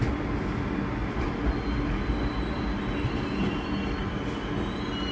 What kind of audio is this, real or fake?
real